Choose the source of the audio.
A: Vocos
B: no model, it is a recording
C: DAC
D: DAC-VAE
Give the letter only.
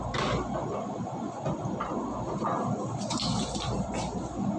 B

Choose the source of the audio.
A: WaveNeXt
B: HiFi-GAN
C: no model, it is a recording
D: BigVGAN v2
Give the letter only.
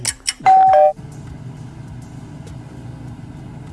C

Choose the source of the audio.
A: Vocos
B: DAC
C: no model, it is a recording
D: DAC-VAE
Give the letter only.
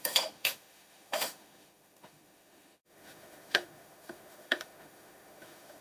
D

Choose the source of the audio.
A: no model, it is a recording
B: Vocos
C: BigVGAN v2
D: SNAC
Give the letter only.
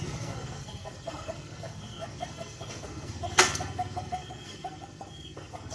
D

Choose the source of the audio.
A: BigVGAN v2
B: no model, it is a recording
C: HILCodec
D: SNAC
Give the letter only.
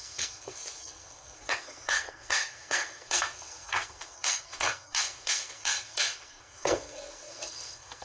D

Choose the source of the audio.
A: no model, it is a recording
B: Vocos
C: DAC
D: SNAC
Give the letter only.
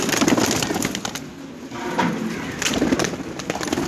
A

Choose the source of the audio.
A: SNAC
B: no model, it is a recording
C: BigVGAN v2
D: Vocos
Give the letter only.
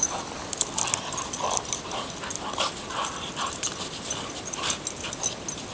B